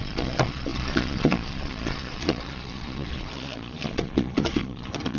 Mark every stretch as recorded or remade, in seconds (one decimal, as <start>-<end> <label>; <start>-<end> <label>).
0.0-5.2 remade